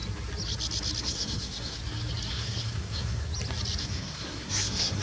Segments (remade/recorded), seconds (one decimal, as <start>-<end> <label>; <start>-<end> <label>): 0.0-1.0 recorded; 1.0-1.8 remade; 1.8-2.3 recorded; 2.3-3.3 remade; 3.3-3.8 recorded; 3.8-5.0 remade